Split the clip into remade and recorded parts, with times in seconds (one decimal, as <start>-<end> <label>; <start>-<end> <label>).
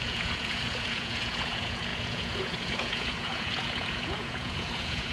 0.0-5.1 remade